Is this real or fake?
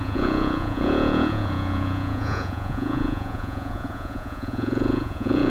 fake